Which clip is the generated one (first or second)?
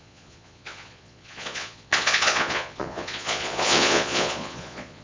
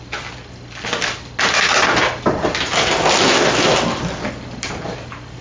first